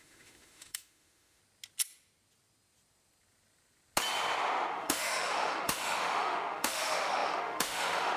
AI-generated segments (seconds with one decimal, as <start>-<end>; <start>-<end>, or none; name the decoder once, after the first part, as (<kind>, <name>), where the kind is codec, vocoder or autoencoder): 0.0-1.4 (autoencoder, DAC-VAE); 4.7-8.2